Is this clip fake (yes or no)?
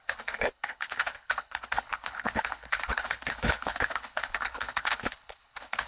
yes